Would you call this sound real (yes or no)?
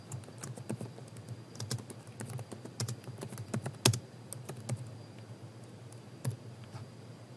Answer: yes